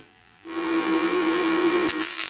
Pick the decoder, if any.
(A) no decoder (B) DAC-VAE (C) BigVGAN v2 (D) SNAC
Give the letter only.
C